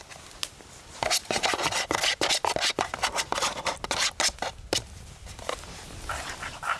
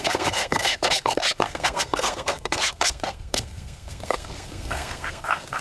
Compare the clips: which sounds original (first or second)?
first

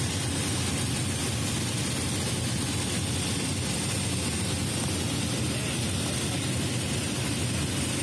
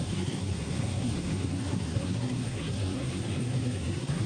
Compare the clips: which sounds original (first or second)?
first